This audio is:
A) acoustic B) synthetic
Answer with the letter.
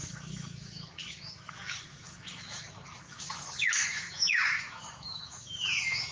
B